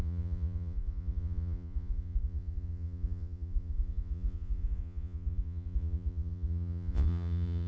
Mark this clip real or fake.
fake